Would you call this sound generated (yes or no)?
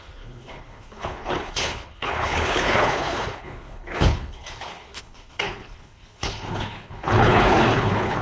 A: yes